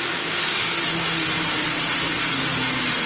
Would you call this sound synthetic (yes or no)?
no